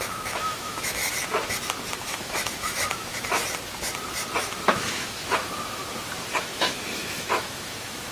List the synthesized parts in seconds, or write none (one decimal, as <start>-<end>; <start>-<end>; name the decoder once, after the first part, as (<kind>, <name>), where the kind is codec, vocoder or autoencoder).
0.0-1.0 (autoencoder, DAC-VAE); 2.0-3.4; 4.4-5.8; 6.4-8.1